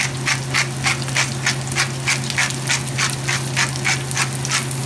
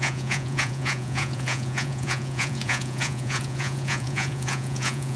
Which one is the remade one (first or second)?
second